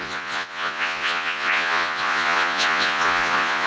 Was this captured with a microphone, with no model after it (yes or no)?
no